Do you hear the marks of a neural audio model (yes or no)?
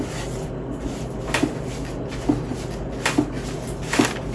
no